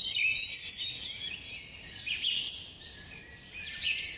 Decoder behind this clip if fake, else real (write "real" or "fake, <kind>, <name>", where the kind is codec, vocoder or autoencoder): real